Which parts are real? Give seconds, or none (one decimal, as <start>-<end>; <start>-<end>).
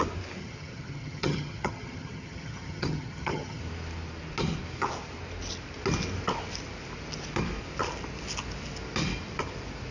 0.0-0.4; 3.6-9.9